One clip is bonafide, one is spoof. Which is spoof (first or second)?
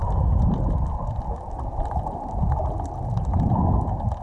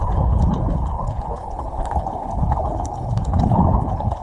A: second